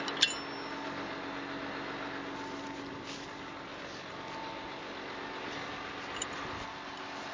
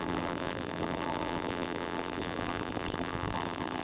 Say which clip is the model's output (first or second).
second